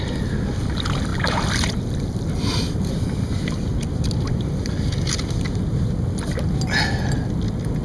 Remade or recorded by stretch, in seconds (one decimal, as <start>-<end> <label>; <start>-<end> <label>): 0.0-7.8 recorded